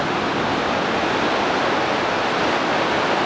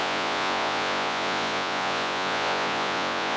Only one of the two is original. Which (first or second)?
first